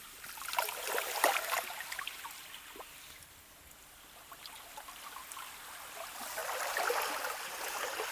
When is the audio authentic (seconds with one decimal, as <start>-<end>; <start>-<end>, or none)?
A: 0.0-8.1

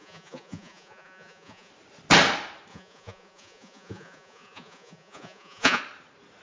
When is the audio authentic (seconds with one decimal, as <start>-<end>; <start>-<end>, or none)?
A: 1.7-2.7; 5.8-6.4

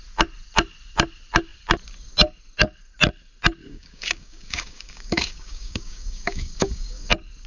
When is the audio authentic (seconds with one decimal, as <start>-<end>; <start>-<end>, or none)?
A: 0.0-3.6; 7.1-7.5

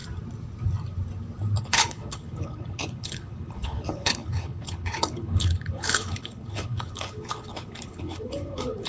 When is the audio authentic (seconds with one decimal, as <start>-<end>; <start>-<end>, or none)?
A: 0.0-1.6